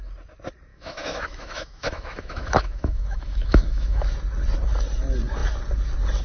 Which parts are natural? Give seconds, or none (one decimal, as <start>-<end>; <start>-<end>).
0.0-0.7; 4.1-6.2